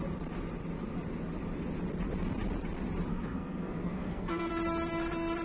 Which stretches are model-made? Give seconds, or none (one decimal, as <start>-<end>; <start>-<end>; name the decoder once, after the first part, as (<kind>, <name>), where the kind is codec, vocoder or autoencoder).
3.1-4.5 (codec, SNAC)